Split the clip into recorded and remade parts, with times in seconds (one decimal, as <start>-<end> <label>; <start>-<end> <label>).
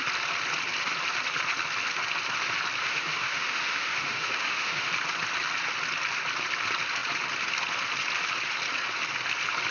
0.0-2.8 recorded; 2.8-4.9 remade; 4.9-9.7 recorded